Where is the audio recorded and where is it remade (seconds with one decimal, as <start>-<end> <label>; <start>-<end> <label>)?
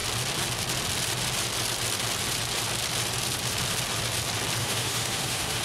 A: 0.0-4.6 recorded; 4.6-5.6 remade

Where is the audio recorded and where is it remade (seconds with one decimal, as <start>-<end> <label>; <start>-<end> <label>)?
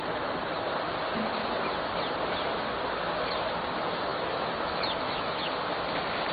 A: 0.0-4.1 recorded; 4.1-5.5 remade; 5.5-6.3 recorded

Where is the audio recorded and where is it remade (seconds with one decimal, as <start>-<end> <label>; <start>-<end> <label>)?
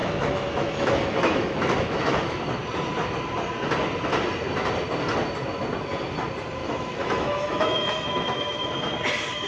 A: 0.0-2.4 remade; 2.4-6.6 recorded; 6.6-8.7 remade; 8.7-9.5 recorded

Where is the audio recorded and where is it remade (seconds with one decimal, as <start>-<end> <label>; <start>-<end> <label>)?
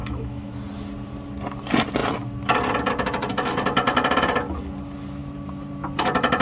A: 0.0-0.5 remade; 0.5-6.4 recorded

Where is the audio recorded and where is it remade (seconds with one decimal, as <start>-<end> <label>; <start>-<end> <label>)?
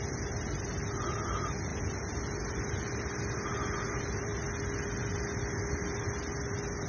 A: 0.0-6.9 recorded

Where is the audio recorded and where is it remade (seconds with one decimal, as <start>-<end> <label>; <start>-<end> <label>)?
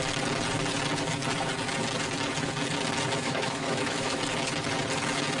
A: 0.0-3.2 recorded; 3.2-4.2 remade; 4.2-5.4 recorded